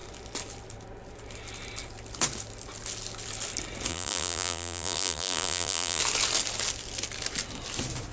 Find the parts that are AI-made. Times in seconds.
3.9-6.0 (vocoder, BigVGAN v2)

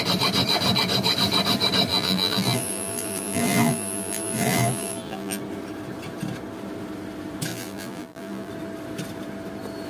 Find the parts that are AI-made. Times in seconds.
1.9-5.4 (vocoder, BigVGAN v2); 7.5-8.5

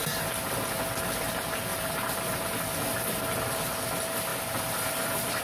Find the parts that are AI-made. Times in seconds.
1.7-3.2 (vocoder, BigVGAN v2); 4.3-5.4

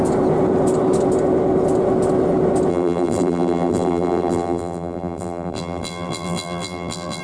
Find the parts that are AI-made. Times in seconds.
2.7-7.2 (vocoder, BigVGAN v2)

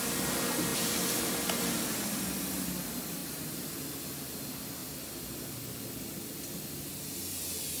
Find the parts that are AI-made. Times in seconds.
0.7-1.3 (vocoder, BigVGAN v2)